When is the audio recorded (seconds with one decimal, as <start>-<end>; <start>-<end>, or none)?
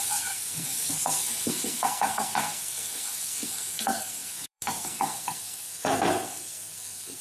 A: none